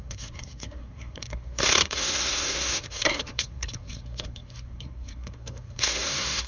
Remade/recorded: remade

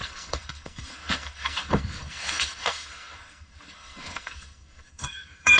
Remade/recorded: remade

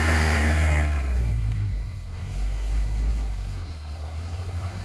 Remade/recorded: remade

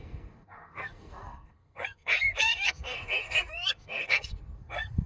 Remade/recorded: remade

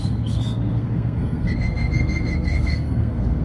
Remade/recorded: remade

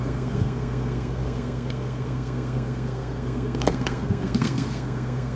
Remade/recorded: remade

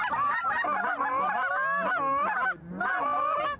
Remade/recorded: recorded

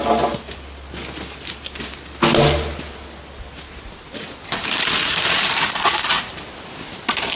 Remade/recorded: recorded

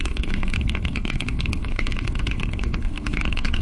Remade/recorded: remade